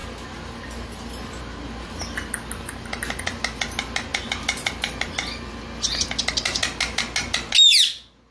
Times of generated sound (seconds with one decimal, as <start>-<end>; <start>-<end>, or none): none